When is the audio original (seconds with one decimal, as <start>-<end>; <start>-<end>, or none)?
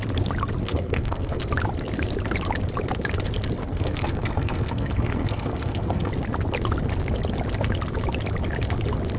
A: 0.0-0.6; 1.4-3.6; 6.1-9.2